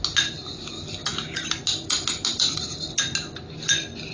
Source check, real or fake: real